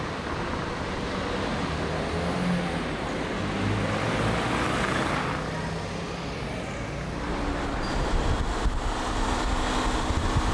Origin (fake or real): real